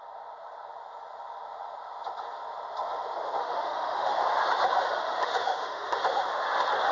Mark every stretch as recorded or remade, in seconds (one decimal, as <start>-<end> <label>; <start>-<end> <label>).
0.0-3.4 recorded; 3.4-4.2 remade; 4.2-5.0 recorded; 5.0-6.3 remade; 6.3-6.9 recorded